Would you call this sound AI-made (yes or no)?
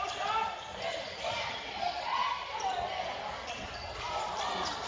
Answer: yes